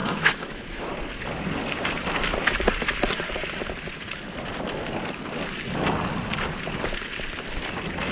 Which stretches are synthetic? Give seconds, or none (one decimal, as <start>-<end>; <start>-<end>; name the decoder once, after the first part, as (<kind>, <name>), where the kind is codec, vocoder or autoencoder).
0.0-0.9 (autoencoder, DAC-VAE)